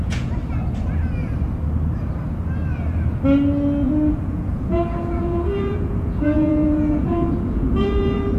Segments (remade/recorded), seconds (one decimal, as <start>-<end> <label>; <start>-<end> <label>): 0.0-0.4 remade; 0.4-4.1 recorded; 4.1-8.4 remade